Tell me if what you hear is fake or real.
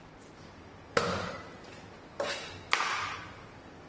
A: real